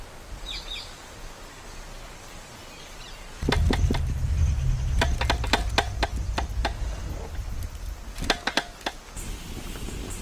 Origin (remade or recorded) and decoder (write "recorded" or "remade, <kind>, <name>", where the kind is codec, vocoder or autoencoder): recorded